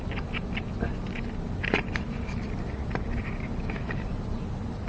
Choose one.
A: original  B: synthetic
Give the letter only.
A